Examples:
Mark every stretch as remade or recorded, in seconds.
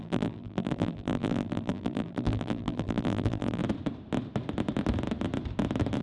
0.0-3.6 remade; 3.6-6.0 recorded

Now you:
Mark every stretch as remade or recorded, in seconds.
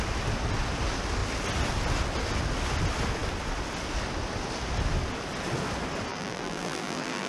0.0-6.1 recorded; 6.1-7.3 remade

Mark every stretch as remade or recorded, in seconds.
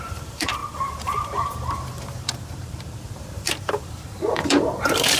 0.0-5.2 remade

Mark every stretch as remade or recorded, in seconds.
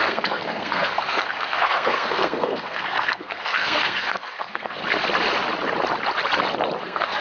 0.0-4.8 remade; 4.8-6.8 recorded; 6.8-7.2 remade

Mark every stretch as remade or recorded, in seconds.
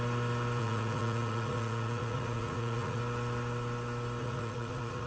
0.0-0.6 recorded; 0.6-3.0 remade; 3.0-4.2 recorded; 4.2-5.1 remade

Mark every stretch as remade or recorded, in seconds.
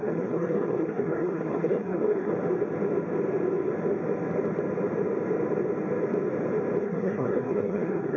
0.0-2.3 remade; 2.3-6.8 recorded; 6.8-8.2 remade